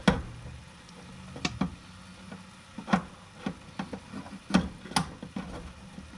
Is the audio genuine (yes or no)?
yes